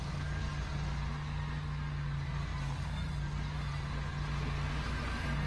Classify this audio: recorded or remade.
recorded